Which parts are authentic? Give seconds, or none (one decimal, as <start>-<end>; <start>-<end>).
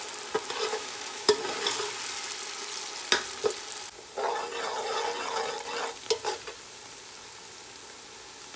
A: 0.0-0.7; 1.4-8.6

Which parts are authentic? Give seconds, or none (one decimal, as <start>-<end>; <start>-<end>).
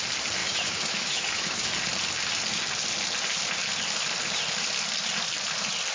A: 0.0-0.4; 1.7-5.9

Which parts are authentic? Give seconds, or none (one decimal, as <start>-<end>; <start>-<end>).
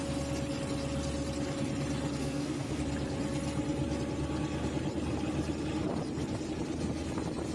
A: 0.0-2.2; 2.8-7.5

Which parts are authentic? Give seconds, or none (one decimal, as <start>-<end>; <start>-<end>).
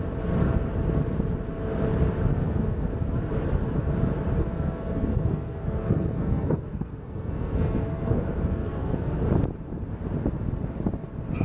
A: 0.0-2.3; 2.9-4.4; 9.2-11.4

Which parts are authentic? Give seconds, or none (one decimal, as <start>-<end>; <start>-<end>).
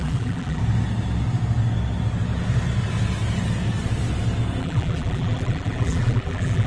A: 0.6-4.6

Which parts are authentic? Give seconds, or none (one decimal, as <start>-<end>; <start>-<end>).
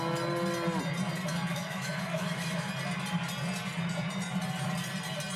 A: 0.0-1.5; 2.7-5.4